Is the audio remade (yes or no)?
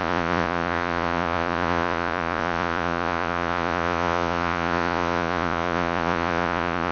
yes